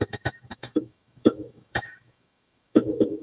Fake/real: fake